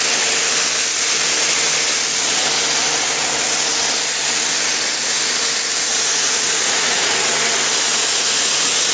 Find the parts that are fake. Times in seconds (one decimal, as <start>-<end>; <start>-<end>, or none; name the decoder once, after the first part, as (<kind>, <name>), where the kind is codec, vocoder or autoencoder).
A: 5.9-7.1 (vocoder, Vocos); 7.9-8.9